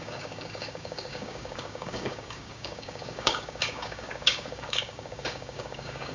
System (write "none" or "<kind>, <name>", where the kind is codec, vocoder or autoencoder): codec, DAC